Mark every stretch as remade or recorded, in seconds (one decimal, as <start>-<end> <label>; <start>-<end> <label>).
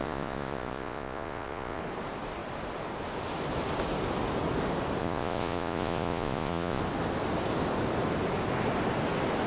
0.0-1.8 remade; 1.8-5.0 recorded; 5.0-6.8 remade; 6.8-9.5 recorded